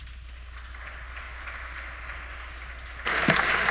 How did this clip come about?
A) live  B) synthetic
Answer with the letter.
A